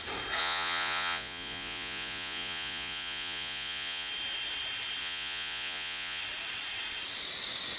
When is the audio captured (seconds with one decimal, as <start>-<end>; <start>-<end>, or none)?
0.0-0.4; 4.1-5.0; 6.2-7.8